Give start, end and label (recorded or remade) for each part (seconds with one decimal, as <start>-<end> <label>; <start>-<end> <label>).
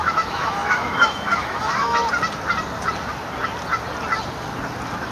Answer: 0.0-2.0 remade; 2.0-5.1 recorded